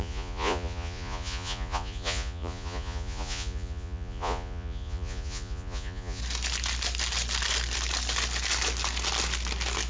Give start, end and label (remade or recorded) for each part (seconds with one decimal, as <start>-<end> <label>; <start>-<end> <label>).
0.0-6.2 remade; 6.2-9.9 recorded